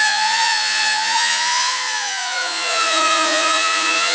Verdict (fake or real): fake